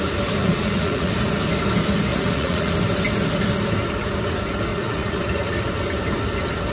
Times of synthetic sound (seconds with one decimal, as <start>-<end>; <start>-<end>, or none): 0.4-1.1; 2.1-2.7; 4.7-5.2